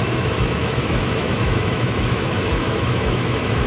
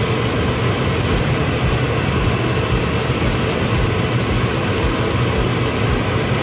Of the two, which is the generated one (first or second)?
first